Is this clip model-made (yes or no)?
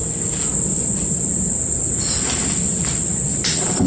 no